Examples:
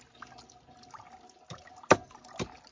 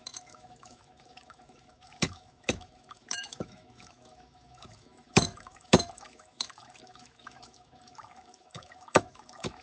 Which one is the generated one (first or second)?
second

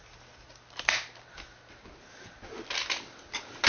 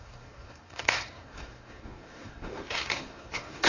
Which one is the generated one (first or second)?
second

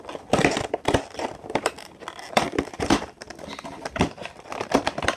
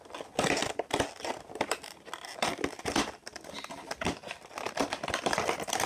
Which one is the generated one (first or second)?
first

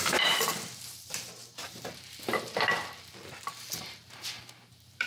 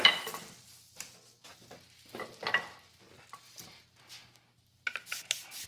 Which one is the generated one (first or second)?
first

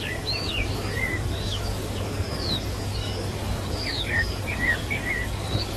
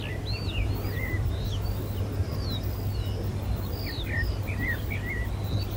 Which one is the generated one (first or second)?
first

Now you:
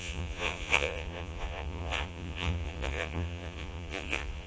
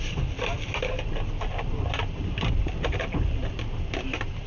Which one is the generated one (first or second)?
first